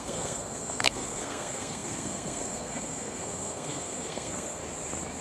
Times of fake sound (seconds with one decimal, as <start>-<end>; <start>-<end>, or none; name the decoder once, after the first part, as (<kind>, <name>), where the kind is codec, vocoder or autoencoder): 0.0-4.6 (codec, SNAC)

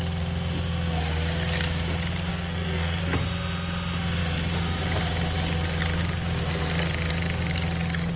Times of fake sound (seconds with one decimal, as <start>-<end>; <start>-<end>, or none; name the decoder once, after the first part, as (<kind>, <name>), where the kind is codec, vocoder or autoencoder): 2.3-3.0 (codec, SNAC)

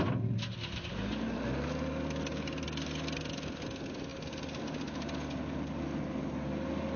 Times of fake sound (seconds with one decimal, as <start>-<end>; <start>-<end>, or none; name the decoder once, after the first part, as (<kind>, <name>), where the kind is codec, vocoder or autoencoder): none

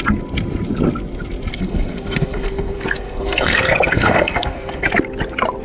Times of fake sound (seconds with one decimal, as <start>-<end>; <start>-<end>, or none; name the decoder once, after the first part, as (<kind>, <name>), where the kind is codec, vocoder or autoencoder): 1.5-4.9 (codec, SNAC)

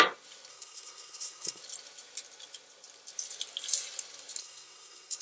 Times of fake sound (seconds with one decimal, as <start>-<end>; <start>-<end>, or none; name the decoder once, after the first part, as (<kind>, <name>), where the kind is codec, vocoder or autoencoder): 0.5-1.6 (codec, SNAC); 4.4-5.2

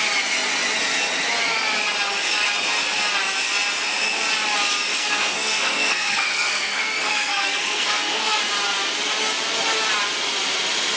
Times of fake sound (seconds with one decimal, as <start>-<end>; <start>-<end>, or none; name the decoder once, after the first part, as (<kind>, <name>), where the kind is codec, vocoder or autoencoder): 4.9-8.4 (codec, SNAC)

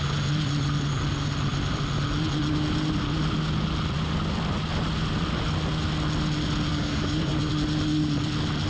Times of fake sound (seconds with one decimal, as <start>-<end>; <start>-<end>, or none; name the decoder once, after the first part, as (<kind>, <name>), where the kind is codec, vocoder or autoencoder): 6.7-7.5 (codec, DAC)